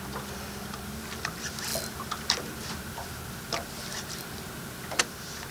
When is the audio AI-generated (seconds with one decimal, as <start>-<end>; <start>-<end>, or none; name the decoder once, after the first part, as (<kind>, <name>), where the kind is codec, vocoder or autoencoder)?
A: none